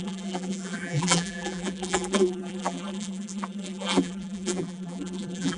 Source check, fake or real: fake